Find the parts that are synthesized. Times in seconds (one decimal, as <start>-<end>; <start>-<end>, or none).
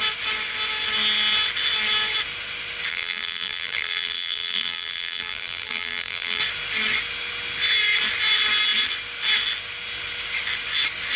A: 2.9-6.4